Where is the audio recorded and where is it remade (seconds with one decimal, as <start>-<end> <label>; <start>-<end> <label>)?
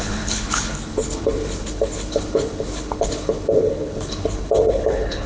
0.0-5.3 remade